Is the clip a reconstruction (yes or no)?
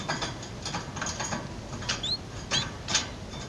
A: no